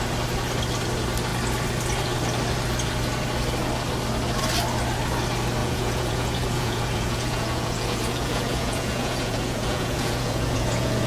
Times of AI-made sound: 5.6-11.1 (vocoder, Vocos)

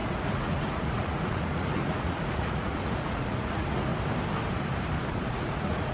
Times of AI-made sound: 0.0-3.9 (vocoder, Vocos); 5.1-5.9